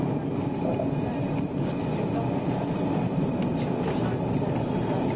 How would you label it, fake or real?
real